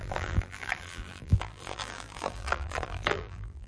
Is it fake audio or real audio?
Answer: fake